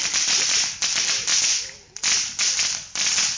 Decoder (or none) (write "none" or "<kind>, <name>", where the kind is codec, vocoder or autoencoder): none